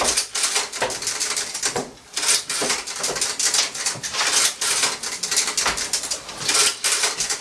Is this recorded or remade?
recorded